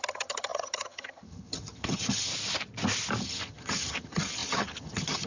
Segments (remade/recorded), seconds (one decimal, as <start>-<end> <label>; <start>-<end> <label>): 0.0-2.3 remade; 2.3-3.2 recorded; 3.2-5.3 remade